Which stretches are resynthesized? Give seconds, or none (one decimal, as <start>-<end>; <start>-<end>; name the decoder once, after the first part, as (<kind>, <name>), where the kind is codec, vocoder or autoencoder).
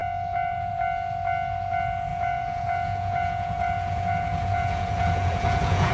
0.0-0.7 (vocoder, Vocos); 2.1-5.9